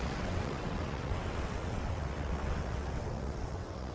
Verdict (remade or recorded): remade